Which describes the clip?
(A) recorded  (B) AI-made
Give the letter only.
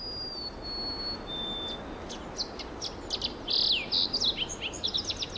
A